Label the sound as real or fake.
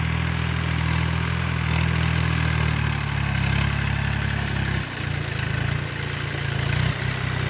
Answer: real